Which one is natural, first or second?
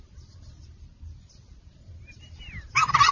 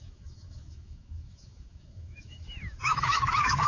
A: first